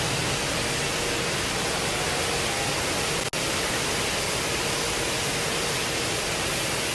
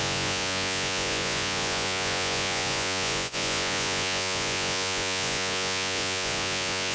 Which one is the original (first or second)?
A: first